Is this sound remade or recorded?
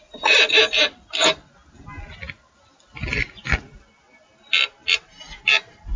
recorded